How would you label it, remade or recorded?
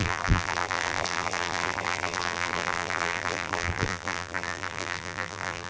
remade